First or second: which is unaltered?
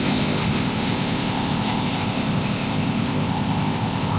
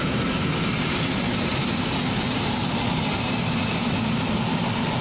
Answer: second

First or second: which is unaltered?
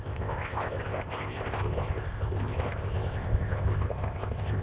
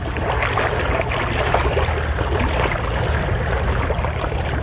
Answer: second